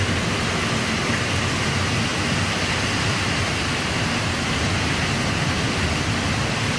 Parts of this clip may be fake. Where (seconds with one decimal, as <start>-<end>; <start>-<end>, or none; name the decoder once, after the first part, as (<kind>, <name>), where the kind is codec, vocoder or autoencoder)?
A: none